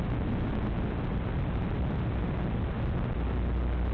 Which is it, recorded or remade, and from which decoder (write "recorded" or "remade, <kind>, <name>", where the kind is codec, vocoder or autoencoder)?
recorded